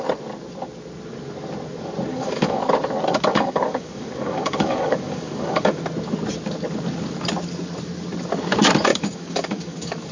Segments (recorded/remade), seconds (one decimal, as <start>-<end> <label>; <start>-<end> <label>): 0.0-2.1 recorded; 2.1-2.6 remade; 2.6-3.3 recorded; 3.3-5.8 remade; 5.8-8.9 recorded; 8.9-10.1 remade